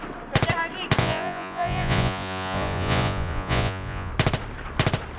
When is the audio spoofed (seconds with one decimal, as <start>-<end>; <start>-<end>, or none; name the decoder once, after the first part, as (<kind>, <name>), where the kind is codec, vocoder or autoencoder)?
1.0-4.1 (vocoder, Vocos)